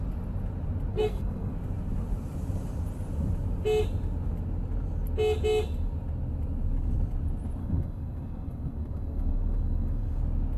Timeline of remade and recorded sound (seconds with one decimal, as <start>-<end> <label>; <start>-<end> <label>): 0.0-0.9 recorded; 0.9-1.5 remade; 1.5-7.6 recorded; 7.6-10.2 remade; 10.2-10.6 recorded